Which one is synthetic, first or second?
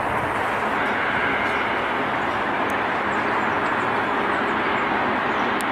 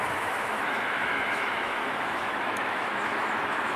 second